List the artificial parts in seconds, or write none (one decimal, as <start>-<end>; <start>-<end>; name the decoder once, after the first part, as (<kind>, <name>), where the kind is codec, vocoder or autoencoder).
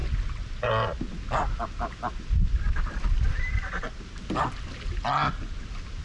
none